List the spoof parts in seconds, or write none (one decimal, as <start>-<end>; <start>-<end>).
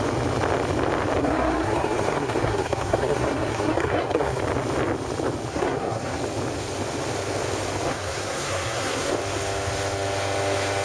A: 1.2-4.4; 5.5-6.2; 7.9-9.1